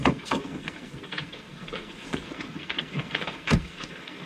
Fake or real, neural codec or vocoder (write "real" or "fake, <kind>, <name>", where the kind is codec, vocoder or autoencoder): fake, codec, SNAC